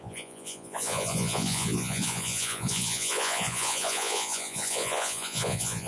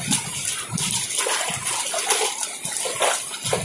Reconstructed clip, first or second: first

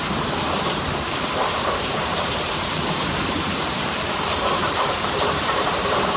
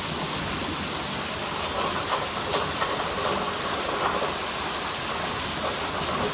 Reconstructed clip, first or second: first